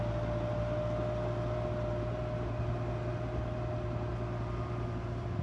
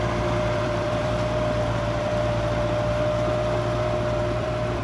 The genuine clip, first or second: first